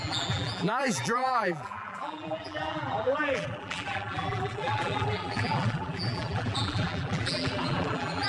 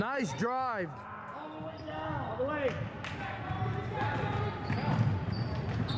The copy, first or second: first